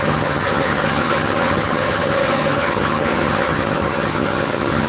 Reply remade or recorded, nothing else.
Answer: remade